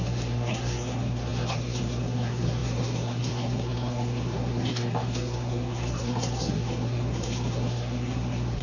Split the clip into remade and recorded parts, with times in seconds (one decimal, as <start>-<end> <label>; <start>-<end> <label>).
0.0-8.6 remade